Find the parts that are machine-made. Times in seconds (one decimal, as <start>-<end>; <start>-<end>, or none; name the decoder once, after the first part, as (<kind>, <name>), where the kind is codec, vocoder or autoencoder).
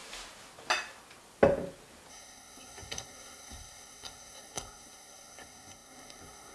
2.1-6.5 (codec, SNAC)